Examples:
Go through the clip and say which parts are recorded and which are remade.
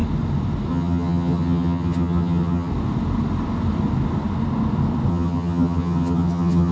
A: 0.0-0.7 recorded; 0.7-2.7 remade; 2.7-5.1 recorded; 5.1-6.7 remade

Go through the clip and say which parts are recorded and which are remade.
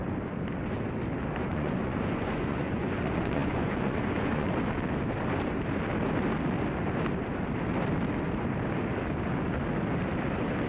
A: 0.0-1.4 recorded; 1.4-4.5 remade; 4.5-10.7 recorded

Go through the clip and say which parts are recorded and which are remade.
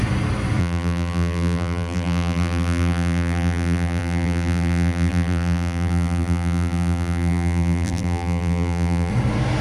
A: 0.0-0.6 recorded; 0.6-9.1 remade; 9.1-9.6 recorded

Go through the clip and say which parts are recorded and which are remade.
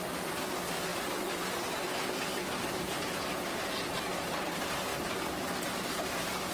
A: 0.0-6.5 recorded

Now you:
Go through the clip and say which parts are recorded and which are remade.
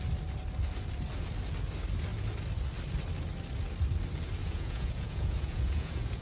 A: 0.0-4.4 recorded; 4.4-6.2 remade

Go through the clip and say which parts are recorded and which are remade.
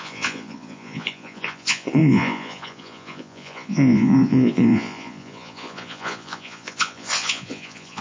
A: 0.0-8.0 remade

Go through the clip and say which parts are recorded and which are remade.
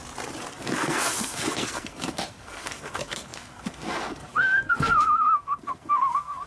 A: 0.0-0.5 recorded; 0.5-6.5 remade